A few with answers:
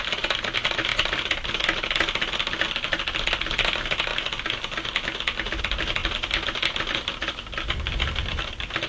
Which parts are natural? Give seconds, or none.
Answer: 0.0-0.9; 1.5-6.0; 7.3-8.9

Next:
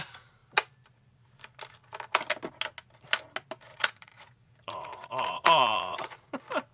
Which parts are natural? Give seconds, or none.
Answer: 0.0-3.7; 6.3-6.7

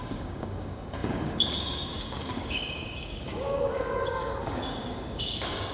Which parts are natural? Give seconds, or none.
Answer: none

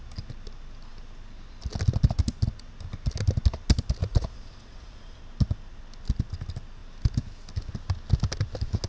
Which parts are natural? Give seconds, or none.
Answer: 0.0-4.0; 5.2-8.9

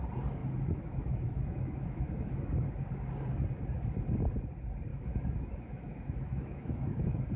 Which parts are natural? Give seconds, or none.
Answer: 0.0-0.4; 2.7-4.9